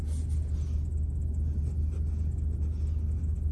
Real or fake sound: real